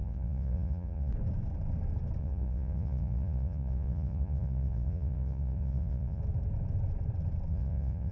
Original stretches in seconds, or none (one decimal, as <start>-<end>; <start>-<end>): 1.1-2.2; 6.2-7.5